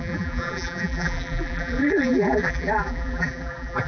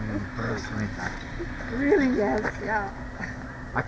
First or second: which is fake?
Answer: first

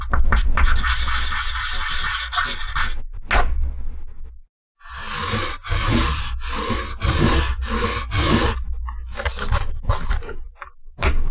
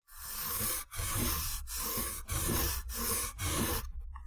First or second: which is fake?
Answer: second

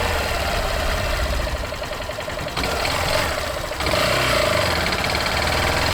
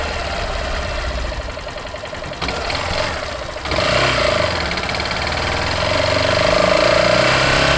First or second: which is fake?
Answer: first